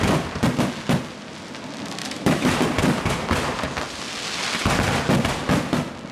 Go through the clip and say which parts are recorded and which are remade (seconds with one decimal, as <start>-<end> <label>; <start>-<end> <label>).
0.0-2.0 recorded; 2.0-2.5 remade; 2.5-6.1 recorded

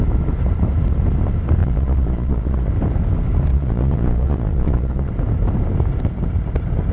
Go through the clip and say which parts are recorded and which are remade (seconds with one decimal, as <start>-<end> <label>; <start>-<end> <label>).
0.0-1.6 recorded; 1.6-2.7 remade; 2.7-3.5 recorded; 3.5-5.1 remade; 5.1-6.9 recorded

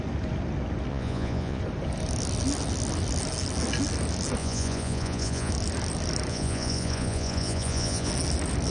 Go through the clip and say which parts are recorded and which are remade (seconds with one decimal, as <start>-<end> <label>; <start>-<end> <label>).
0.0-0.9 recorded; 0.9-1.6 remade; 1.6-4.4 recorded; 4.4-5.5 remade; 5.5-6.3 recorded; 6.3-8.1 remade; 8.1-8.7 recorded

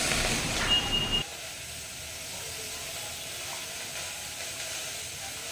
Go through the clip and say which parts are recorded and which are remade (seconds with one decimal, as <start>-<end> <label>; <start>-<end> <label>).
0.0-5.5 recorded

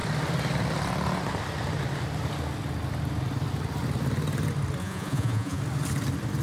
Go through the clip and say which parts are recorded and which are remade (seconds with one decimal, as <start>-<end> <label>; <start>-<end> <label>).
0.0-4.8 recorded; 4.8-5.6 remade; 5.6-6.4 recorded